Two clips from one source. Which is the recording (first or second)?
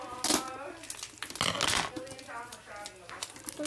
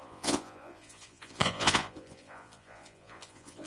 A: first